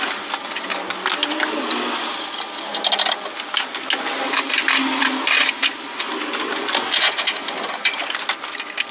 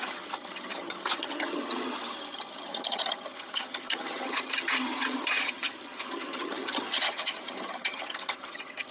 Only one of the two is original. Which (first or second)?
first